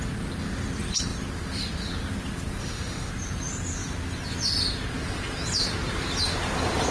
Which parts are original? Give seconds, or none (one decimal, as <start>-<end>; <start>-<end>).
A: 0.0-2.6; 3.1-6.9